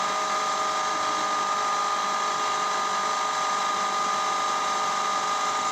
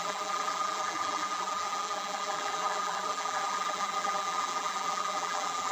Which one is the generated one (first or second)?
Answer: second